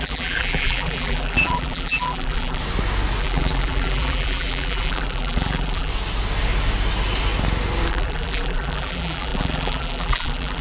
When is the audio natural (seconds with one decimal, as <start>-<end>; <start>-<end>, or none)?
2.6-3.2; 5.9-7.9